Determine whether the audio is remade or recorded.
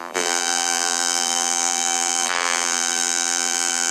remade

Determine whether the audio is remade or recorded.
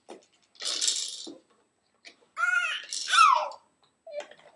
recorded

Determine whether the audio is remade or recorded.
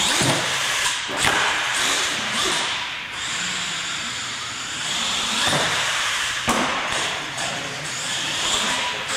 remade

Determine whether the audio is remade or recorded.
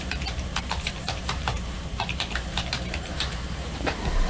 remade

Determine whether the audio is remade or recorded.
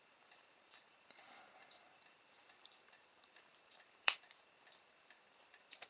remade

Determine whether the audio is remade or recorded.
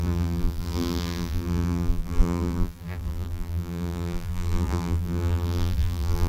remade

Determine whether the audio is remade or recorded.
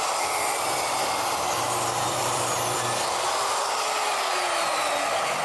remade